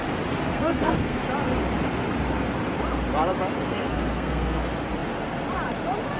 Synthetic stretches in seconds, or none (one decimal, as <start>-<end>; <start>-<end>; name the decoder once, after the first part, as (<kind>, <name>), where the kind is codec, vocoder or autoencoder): 0.5-1.2 (codec, SNAC); 3.7-4.6